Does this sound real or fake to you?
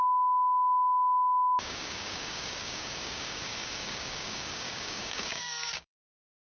fake